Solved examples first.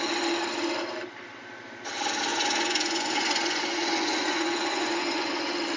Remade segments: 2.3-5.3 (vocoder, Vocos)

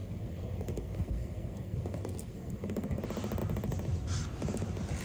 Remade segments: 0.0-3.0 (codec, SNAC)

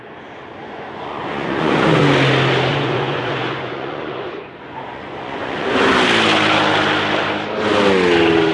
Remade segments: 0.6-2.0 (vocoder, Vocos); 2.7-5.7

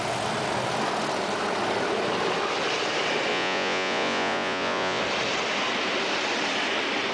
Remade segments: 3.3-5.0 (vocoder, Vocos)

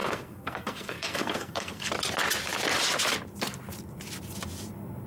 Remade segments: 0.0-1.9 (codec, SNAC)

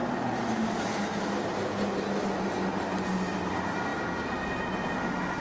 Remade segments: none